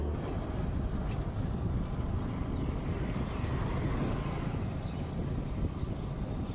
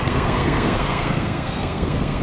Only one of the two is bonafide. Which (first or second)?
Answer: first